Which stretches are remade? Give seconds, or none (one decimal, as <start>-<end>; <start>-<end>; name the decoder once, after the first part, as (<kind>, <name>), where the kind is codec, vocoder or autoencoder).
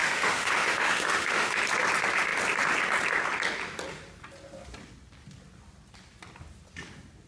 0.0-1.6 (autoencoder, DAC-VAE)